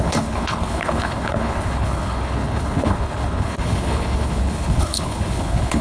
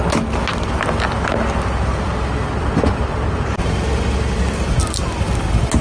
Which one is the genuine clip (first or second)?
second